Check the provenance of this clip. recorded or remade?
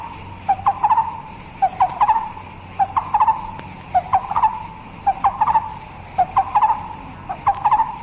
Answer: recorded